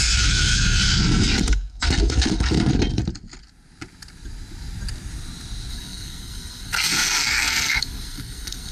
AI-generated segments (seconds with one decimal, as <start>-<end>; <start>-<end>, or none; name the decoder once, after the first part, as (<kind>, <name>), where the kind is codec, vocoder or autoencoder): 0.0-2.7 (codec, SNAC); 5.7-8.7